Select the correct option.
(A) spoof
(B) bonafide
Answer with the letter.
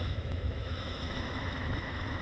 A